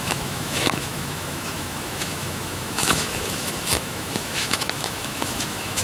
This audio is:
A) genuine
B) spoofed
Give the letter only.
B